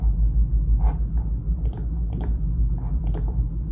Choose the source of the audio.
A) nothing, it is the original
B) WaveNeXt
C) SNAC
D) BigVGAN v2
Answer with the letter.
A